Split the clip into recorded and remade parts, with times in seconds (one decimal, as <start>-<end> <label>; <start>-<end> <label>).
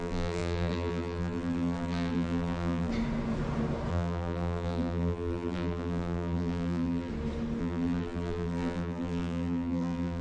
0.0-2.9 remade; 2.9-3.9 recorded; 3.9-7.1 remade; 7.1-7.6 recorded; 7.6-10.2 remade